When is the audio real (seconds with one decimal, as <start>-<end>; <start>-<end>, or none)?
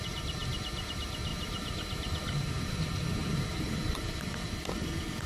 0.0-1.3; 4.5-5.3